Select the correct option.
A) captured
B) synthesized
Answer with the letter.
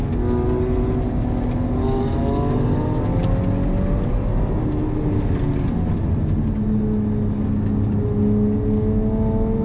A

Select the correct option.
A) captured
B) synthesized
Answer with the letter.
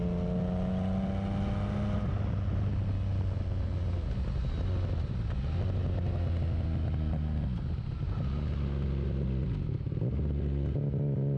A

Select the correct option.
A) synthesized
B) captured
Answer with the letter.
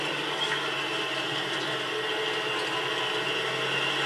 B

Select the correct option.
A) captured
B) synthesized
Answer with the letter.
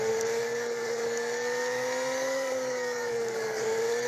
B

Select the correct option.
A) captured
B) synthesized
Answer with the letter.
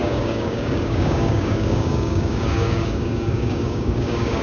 B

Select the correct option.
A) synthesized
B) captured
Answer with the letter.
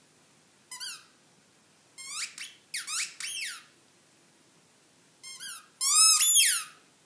B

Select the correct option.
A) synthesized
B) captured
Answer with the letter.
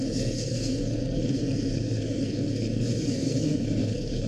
A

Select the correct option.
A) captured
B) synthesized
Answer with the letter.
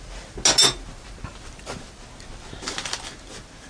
A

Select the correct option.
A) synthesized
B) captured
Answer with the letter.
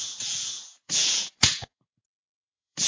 A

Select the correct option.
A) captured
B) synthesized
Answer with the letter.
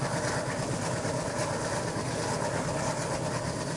A